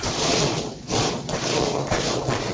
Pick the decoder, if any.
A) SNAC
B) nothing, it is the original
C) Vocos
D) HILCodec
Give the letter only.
C